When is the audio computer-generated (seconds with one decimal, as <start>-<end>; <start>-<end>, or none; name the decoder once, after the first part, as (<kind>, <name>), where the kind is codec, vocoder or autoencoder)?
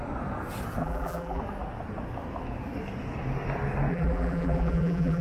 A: 0.8-1.4 (vocoder, BigVGAN v2); 3.9-5.2